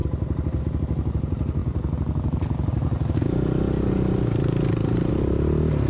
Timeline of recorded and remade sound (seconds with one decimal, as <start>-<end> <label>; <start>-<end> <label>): 0.0-5.9 recorded